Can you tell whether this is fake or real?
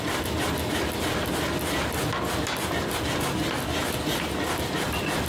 real